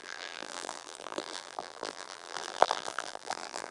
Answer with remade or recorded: remade